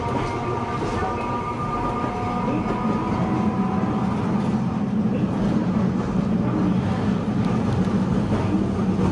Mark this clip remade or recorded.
recorded